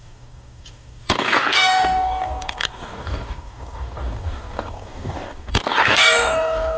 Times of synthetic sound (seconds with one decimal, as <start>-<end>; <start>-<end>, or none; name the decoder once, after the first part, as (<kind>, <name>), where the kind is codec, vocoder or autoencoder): 0.0-6.8 (codec, DAC)